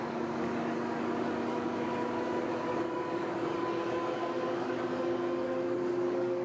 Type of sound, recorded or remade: remade